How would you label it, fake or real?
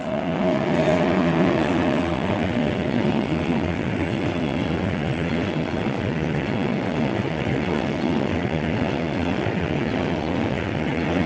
fake